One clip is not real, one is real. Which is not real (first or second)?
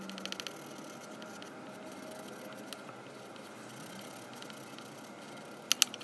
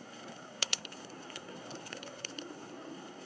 second